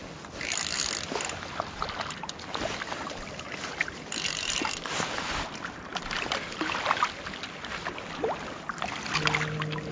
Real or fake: real